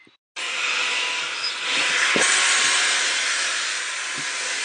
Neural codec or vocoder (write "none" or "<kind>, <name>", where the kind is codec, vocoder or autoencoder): none